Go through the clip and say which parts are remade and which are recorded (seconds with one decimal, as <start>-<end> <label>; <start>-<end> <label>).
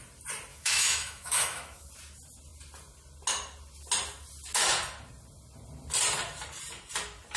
0.0-0.5 recorded; 0.5-1.9 remade; 1.9-7.4 recorded